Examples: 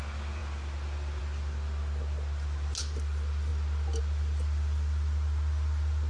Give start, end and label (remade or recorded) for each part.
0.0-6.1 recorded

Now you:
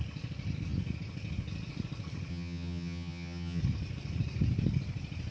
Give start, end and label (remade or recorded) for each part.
0.0-2.3 recorded; 2.3-3.6 remade; 3.6-5.3 recorded

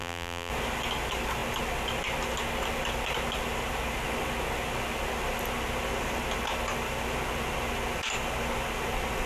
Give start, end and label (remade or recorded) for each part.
0.0-0.5 remade; 0.5-9.3 recorded